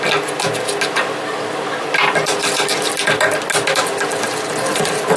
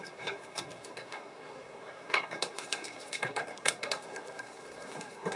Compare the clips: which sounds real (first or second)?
first